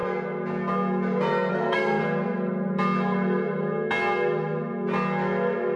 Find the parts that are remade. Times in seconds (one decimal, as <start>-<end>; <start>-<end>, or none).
1.5-2.0